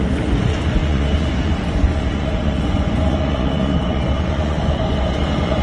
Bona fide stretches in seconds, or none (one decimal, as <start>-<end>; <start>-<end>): none